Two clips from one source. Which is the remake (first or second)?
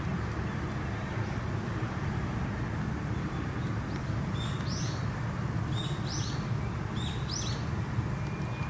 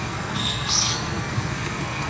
second